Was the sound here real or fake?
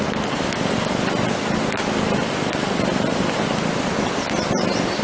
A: real